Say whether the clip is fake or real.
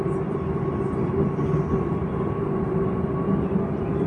real